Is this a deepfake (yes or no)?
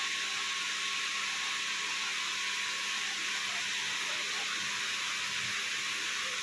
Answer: no